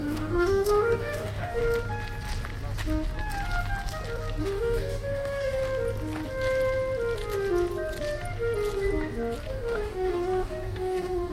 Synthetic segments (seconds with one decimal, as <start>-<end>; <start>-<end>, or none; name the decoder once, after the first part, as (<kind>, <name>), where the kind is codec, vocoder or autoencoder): 0.0-1.6 (codec, DAC); 4.4-5.6; 9.5-11.3